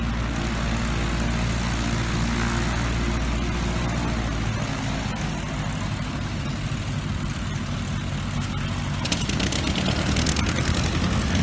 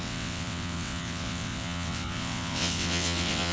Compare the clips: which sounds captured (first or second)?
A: first